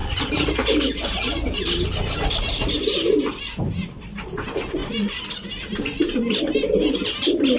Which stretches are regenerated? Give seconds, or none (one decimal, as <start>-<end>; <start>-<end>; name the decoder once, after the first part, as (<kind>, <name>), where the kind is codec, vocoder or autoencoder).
0.0-3.1 (vocoder, BigVGAN v2)

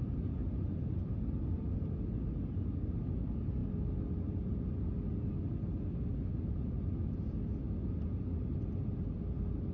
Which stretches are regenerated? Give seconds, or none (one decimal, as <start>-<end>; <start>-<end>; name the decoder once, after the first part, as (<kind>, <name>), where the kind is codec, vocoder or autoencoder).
none

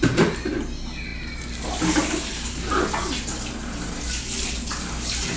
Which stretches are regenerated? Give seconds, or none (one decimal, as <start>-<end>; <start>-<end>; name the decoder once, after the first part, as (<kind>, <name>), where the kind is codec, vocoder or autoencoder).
none

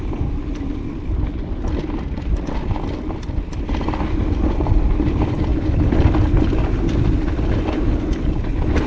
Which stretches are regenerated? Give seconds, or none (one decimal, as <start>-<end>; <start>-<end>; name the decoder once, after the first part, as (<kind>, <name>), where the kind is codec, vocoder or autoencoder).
none

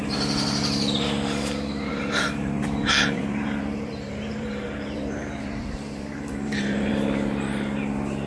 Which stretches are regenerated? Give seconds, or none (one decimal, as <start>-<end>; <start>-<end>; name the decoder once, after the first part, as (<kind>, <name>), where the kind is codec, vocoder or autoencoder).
1.9-6.9 (vocoder, BigVGAN v2)

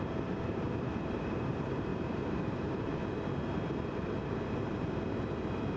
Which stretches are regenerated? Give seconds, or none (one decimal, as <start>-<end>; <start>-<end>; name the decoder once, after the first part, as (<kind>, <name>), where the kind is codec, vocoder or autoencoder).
0.0-1.9 (vocoder, BigVGAN v2); 2.5-3.0

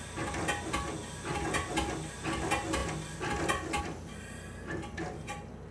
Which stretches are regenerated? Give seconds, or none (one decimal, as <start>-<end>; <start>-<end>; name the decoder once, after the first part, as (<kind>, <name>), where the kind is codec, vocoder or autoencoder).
none